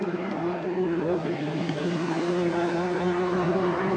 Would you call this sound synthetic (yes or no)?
yes